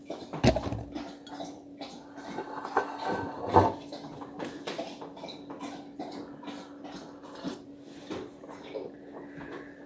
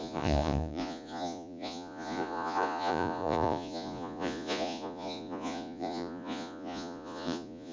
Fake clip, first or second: second